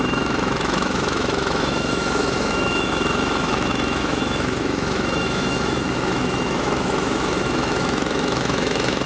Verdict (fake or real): fake